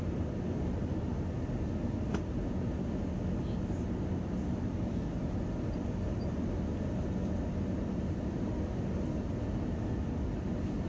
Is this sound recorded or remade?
recorded